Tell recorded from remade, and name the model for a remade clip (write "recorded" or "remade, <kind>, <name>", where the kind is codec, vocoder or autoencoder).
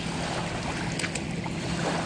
recorded